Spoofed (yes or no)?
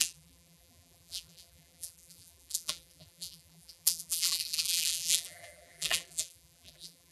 yes